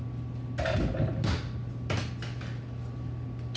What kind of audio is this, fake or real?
real